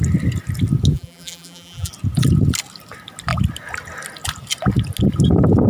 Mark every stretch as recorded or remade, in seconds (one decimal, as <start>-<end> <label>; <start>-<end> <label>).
0.0-0.9 recorded; 0.9-1.9 remade; 1.9-5.7 recorded